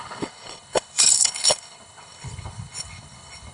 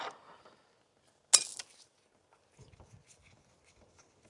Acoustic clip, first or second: second